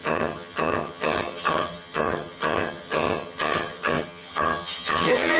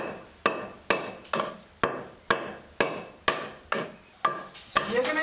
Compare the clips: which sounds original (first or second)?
second